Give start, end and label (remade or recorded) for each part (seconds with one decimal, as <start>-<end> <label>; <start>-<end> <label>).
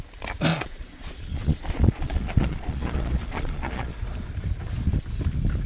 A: 0.0-0.5 recorded; 0.5-3.9 remade; 3.9-5.7 recorded